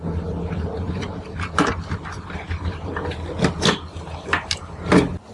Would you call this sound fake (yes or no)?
no